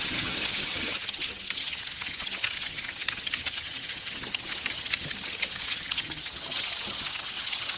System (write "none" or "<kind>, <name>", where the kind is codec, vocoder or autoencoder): vocoder, HiFi-GAN